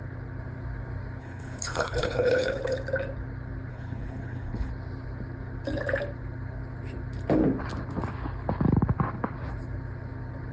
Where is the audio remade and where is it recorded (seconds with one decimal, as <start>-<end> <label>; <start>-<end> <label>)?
0.0-1.2 recorded; 1.2-2.6 remade; 2.6-3.7 recorded; 3.7-4.7 remade; 4.7-10.5 recorded